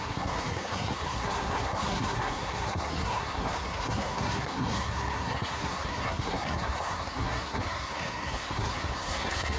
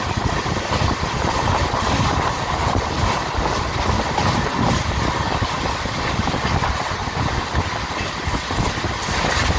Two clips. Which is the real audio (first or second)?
second